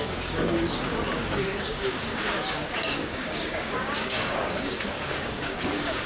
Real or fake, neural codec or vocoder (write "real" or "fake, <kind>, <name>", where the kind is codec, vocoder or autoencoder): fake, codec, DAC